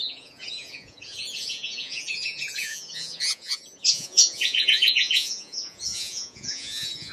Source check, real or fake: fake